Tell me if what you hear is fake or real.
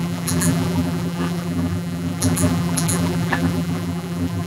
fake